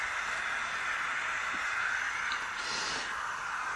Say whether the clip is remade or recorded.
recorded